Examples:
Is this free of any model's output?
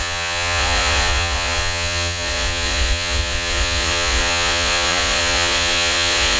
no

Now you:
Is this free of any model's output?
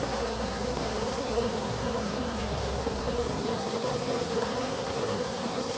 no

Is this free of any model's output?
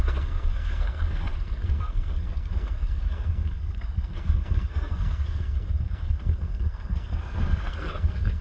no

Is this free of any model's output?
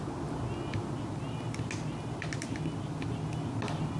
yes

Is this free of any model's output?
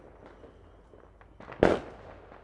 yes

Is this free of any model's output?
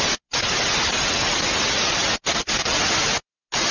yes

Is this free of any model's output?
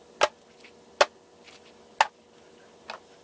yes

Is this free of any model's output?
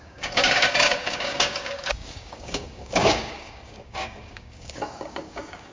no